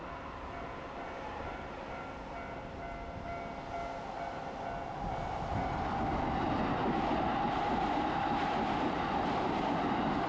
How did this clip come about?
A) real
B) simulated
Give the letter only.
A